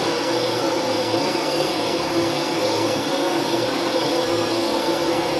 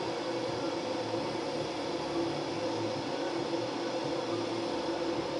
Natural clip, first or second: second